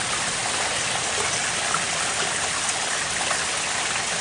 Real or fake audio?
real